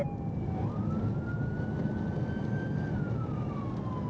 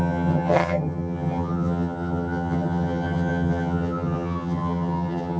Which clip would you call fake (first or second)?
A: second